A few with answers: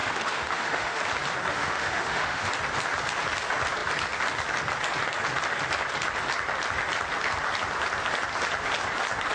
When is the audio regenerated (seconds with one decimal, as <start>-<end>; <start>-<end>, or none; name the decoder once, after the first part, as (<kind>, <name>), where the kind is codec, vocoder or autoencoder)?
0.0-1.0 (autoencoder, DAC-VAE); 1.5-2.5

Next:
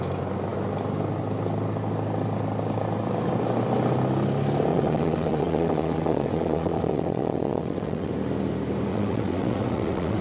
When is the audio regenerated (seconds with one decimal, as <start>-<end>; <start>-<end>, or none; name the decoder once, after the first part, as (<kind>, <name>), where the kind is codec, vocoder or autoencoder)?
4.7-8.1 (vocoder, WaveNeXt); 8.9-10.2

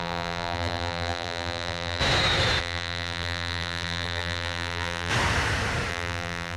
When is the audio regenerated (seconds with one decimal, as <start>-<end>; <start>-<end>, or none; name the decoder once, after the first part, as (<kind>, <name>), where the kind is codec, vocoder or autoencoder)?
0.0-2.0 (vocoder, BigVGAN v2); 2.6-5.1; 5.9-6.6

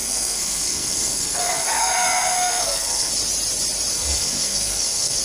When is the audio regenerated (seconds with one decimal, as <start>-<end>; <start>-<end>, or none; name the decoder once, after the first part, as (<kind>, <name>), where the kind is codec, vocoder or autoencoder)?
0.0-3.1 (codec, SNAC); 3.9-5.2